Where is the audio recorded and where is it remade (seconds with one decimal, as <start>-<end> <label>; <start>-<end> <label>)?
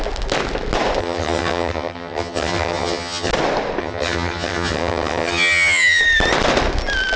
0.0-1.0 recorded; 1.0-3.3 remade; 3.3-3.8 recorded; 3.8-6.0 remade; 6.0-7.2 recorded